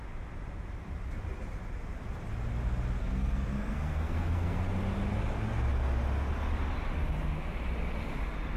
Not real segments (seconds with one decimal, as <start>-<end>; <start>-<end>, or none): 3.0-4.6